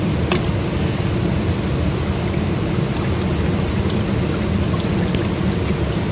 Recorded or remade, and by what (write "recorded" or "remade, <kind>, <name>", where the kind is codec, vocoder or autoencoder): recorded